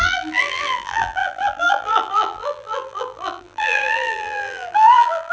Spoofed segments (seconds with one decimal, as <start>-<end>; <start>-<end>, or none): 0.0-5.3